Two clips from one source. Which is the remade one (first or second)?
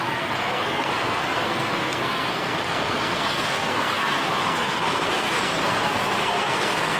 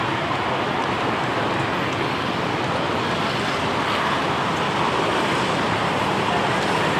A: first